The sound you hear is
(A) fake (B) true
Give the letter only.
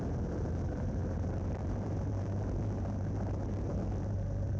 A